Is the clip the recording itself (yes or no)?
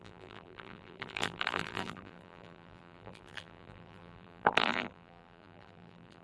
no